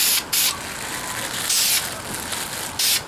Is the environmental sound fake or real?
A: real